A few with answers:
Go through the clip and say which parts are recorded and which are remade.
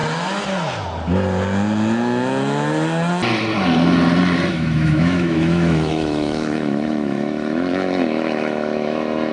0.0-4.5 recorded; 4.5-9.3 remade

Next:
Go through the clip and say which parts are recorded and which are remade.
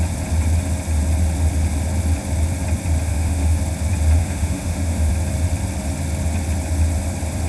0.0-3.1 recorded; 3.1-3.6 remade; 3.6-4.2 recorded; 4.2-5.1 remade; 5.1-7.5 recorded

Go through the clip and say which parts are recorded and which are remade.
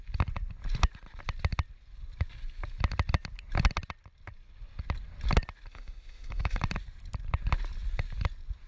0.0-5.7 recorded; 5.7-6.6 remade; 6.6-8.7 recorded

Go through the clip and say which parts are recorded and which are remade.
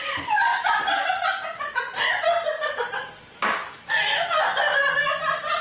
0.0-5.6 recorded